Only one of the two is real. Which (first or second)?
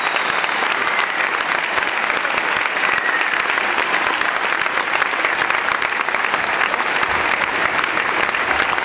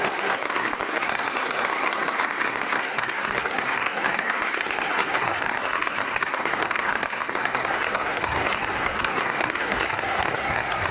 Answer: first